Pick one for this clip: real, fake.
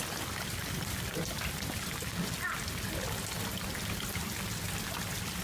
real